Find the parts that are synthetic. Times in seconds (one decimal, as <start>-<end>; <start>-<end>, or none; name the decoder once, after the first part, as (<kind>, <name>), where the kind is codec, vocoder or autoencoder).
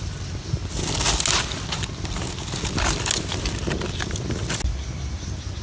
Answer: none